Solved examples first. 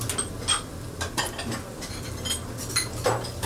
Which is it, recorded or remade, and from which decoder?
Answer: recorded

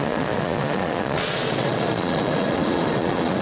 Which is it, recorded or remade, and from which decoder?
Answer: remade, vocoder, Vocos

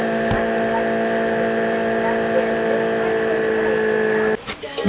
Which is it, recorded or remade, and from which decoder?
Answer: recorded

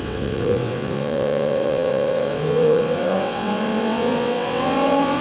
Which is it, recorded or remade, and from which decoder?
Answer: remade, vocoder, WaveNeXt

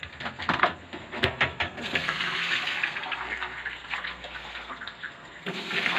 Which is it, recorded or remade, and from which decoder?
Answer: remade, codec, SNAC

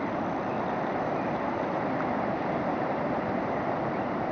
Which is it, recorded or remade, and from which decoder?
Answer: remade, vocoder, BigVGAN v2